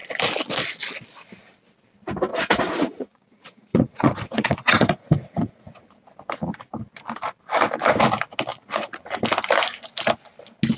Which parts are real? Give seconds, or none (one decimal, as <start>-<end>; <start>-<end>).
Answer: 0.0-2.3; 5.8-8.5; 9.0-10.8